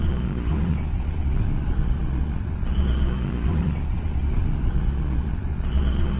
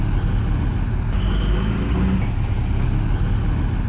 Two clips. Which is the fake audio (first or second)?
first